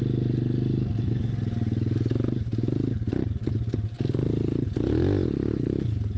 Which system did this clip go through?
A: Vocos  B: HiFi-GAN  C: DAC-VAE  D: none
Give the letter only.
D